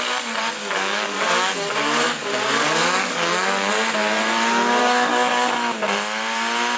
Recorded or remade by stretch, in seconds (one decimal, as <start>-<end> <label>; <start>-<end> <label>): 0.0-0.6 recorded; 0.6-3.7 remade; 3.7-4.8 recorded; 4.8-5.5 remade; 5.5-6.8 recorded